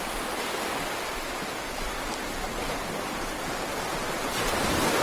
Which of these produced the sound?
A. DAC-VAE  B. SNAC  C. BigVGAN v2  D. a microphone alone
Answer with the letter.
D